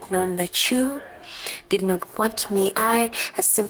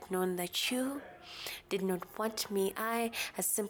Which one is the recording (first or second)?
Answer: second